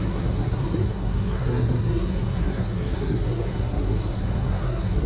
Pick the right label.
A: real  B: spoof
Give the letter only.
B